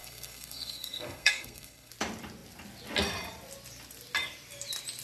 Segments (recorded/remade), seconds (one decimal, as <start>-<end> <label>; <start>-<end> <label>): 0.0-1.9 remade; 1.9-5.0 recorded